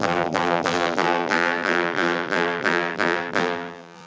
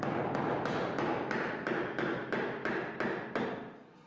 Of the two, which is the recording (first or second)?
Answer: second